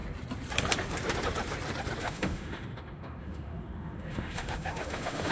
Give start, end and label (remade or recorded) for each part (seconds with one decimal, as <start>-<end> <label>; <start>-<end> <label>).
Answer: 0.0-2.0 recorded; 2.0-5.3 remade